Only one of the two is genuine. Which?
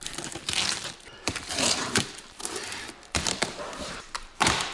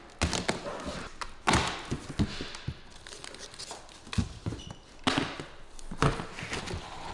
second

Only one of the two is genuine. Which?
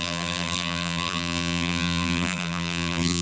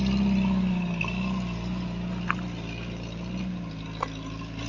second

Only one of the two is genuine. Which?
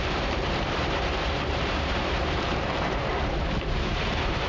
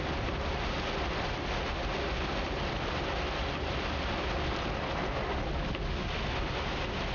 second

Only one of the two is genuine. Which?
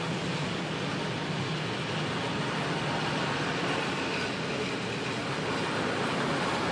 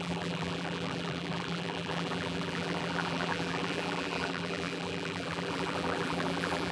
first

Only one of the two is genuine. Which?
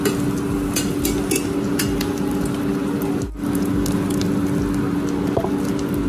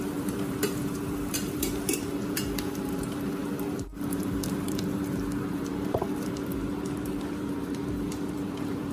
first